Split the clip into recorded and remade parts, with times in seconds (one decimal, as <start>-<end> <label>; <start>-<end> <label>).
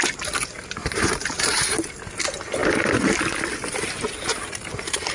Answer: 0.0-0.8 recorded; 0.8-1.6 remade; 1.6-5.1 recorded